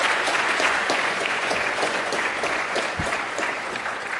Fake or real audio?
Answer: fake